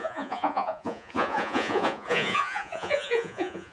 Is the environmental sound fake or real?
fake